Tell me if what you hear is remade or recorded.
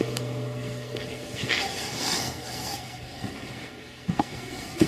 remade